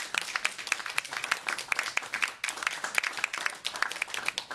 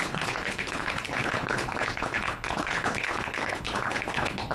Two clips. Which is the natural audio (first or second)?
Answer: first